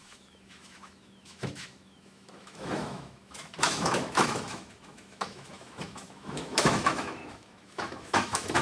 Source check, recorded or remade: remade